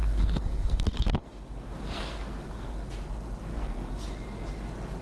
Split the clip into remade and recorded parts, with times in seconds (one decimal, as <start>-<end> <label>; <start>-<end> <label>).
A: 0.0-2.9 remade; 2.9-3.5 recorded; 3.5-4.1 remade; 4.1-5.0 recorded